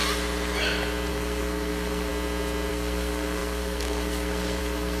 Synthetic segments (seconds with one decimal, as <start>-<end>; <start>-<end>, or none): 1.1-2.1; 2.7-5.0